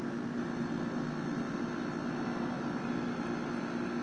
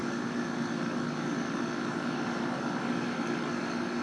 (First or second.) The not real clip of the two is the second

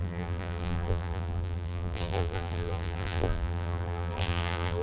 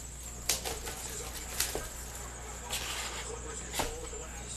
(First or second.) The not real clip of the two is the first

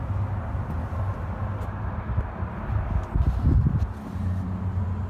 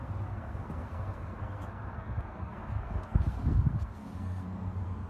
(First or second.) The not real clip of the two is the second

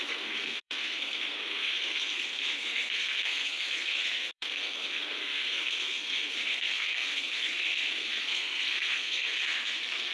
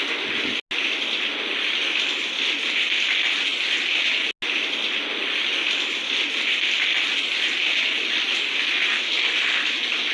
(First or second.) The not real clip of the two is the first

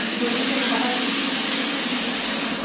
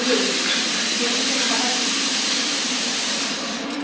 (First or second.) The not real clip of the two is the second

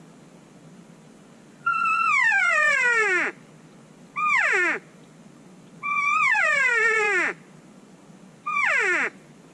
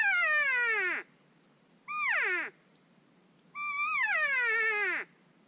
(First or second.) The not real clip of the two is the first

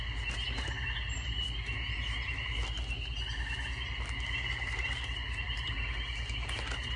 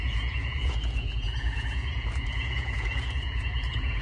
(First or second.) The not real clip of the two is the second